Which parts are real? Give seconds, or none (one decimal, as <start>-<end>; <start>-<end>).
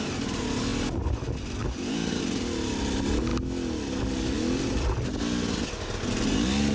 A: 0.0-1.6; 2.2-6.7